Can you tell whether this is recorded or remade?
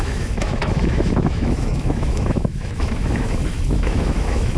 remade